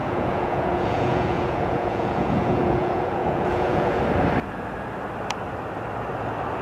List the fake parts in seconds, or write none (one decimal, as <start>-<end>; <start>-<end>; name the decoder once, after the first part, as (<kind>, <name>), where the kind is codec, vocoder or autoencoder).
0.0-4.0 (vocoder, Vocos)